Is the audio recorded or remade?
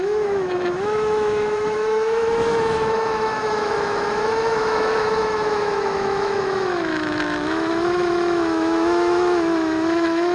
remade